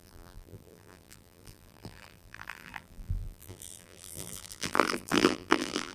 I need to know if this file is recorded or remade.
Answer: remade